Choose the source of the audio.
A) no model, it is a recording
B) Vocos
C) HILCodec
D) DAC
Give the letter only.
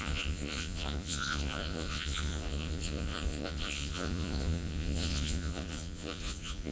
B